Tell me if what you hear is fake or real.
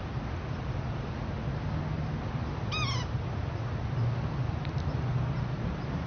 real